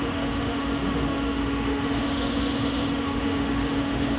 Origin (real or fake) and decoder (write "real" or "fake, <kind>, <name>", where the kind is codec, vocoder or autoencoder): fake, autoencoder, DAC-VAE